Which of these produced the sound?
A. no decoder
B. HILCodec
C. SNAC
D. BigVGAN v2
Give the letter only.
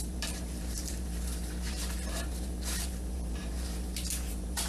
D